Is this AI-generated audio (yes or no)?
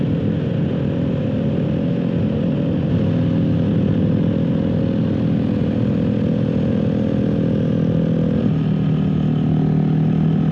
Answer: no